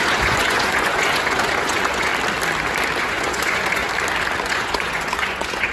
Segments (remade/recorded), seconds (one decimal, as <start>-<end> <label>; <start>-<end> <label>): 0.0-2.1 remade; 2.1-3.0 recorded; 3.0-3.8 remade; 3.8-4.4 recorded; 4.4-5.7 remade

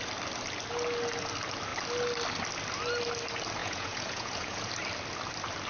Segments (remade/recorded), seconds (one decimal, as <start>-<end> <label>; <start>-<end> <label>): 0.0-3.6 recorded; 3.6-4.7 remade; 4.7-5.7 recorded

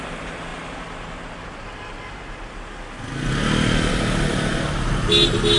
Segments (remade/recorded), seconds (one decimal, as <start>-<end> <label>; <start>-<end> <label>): 0.0-5.6 recorded

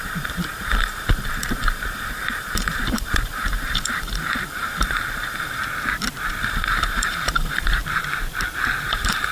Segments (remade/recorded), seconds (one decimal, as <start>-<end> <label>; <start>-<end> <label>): 0.0-5.6 remade; 5.6-6.4 recorded; 6.4-7.8 remade; 7.8-8.9 recorded; 8.9-9.3 remade

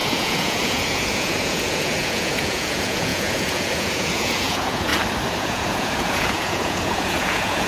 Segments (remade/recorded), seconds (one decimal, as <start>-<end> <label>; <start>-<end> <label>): 0.0-4.9 remade; 4.9-5.4 recorded; 5.4-7.7 remade

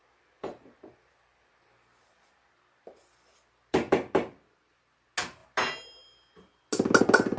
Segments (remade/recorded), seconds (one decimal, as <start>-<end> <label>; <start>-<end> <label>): 0.0-0.9 remade; 0.9-1.3 recorded; 1.3-4.5 remade; 4.5-7.4 recorded